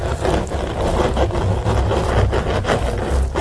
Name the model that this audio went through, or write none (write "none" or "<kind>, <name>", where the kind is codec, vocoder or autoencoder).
none